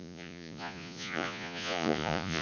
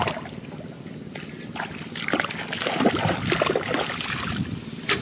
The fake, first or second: first